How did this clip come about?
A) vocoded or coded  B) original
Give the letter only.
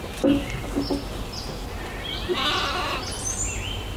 B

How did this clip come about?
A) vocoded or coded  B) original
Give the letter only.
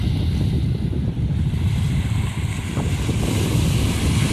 B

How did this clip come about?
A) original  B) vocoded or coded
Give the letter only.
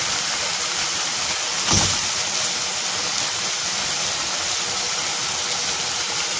A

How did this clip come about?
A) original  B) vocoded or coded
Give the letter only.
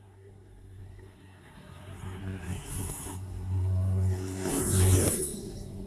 B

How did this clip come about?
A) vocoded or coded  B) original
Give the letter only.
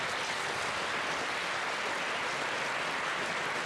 B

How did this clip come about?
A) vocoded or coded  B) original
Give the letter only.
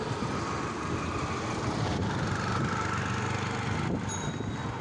B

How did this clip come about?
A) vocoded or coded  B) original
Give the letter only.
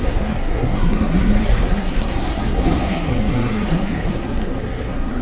A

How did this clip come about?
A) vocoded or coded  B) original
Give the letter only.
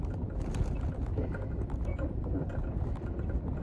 B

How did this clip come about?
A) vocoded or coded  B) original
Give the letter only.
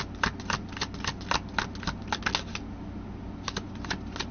B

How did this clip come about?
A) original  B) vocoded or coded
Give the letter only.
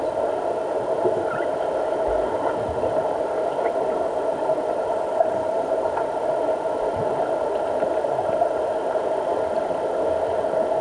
A